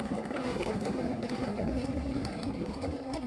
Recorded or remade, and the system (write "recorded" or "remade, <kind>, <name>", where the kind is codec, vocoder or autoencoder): remade, codec, SNAC